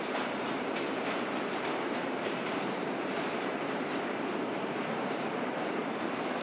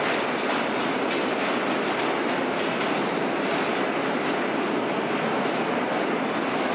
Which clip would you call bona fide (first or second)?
second